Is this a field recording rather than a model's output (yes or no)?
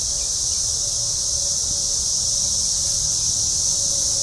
yes